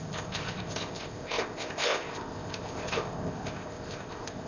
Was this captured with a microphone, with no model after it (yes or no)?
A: no